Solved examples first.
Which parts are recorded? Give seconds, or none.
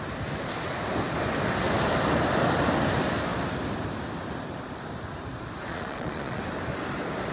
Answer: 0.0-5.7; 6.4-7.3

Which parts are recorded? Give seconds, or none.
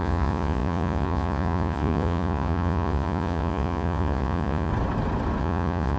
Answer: 4.7-5.4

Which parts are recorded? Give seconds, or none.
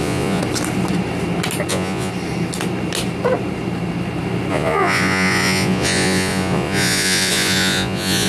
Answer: 0.4-1.7; 2.1-4.5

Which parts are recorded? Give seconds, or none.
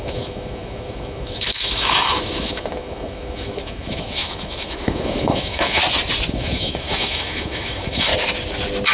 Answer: 5.8-6.3; 8.1-8.9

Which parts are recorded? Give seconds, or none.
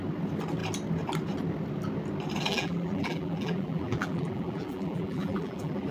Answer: 0.0-2.5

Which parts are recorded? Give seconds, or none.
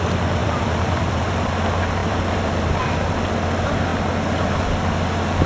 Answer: 0.0-0.4; 1.5-2.0; 2.7-5.5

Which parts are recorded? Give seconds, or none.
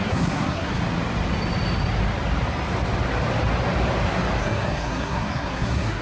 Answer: 0.8-4.4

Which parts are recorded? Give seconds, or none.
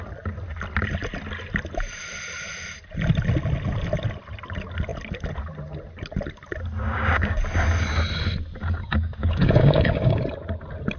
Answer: 0.0-6.8; 7.4-8.6; 10.2-11.0